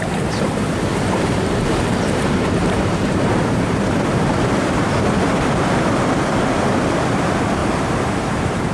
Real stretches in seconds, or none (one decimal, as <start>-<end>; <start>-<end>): 0.0-0.9; 5.7-7.6